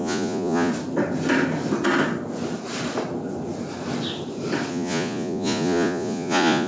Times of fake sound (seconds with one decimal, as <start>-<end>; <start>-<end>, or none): 0.0-0.7; 4.7-6.7